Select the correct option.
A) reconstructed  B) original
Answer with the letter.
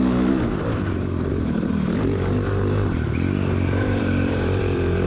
A